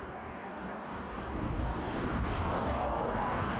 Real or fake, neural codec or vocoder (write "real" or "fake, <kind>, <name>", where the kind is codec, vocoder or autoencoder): fake, codec, DAC